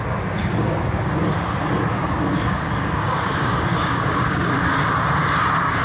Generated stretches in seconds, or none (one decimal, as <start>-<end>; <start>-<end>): 0.4-1.1; 1.9-4.8